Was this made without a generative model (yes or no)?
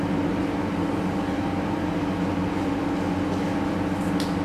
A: yes